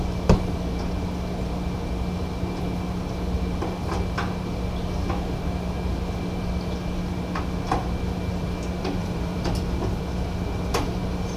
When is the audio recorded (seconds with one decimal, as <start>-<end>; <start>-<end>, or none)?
0.0-9.0; 9.5-11.4